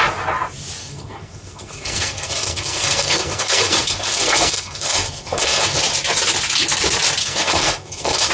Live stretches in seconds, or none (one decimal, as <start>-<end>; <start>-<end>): 0.0-0.8; 5.8-7.2